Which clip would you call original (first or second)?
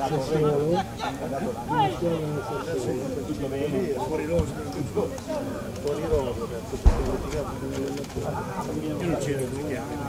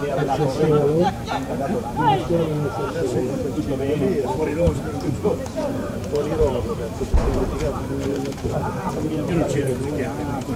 first